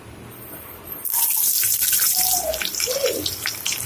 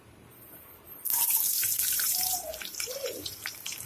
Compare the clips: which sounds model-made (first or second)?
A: second